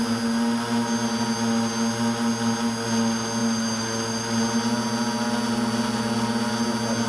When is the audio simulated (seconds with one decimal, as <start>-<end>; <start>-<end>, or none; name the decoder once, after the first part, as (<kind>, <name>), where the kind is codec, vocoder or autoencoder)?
none